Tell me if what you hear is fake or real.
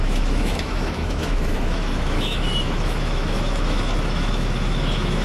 fake